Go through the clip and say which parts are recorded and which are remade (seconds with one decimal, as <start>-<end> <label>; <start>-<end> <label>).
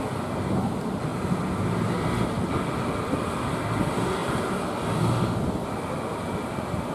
0.0-6.9 recorded